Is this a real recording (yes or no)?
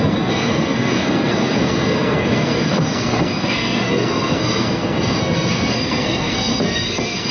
no